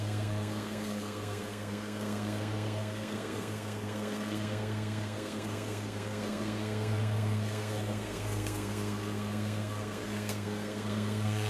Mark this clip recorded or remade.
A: remade